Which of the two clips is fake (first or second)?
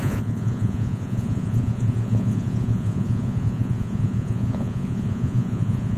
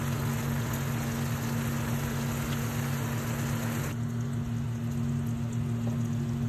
first